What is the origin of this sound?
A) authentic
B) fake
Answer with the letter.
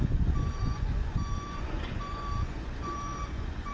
B